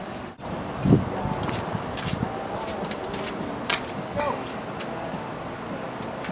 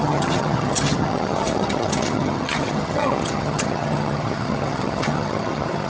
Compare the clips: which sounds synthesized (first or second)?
second